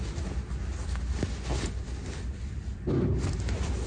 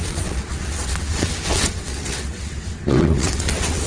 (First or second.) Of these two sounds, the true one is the first